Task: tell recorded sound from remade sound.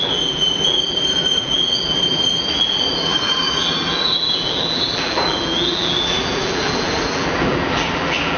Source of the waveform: remade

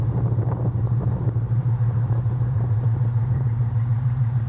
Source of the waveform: remade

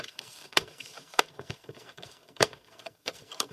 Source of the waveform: remade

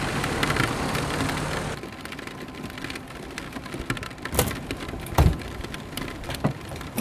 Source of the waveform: remade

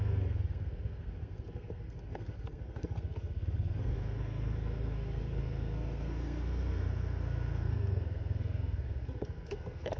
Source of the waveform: remade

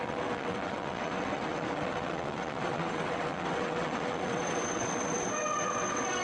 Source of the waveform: remade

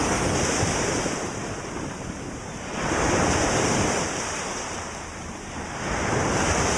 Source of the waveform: remade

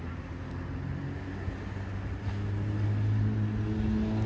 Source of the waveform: recorded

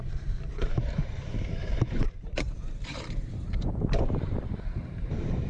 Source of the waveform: remade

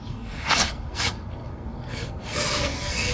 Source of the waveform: remade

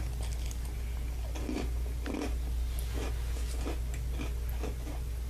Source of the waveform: recorded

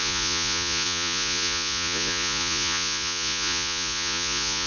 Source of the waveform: remade